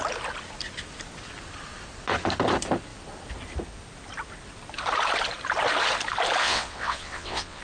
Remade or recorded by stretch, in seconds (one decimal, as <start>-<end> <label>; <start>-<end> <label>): 0.0-6.4 recorded; 6.4-7.6 remade